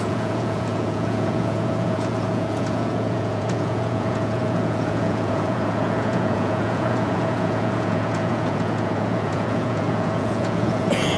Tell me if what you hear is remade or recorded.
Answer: remade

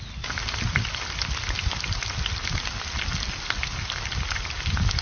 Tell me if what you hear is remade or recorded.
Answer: recorded